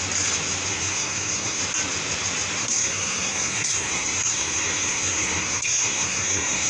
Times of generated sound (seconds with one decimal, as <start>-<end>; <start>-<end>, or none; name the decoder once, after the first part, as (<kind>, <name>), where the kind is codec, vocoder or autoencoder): 0.7-1.6 (codec, SNAC); 2.6-6.7